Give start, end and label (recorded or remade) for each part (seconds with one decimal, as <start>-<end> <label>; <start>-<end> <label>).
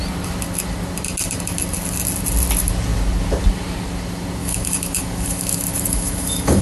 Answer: 0.0-4.4 recorded; 4.4-6.6 remade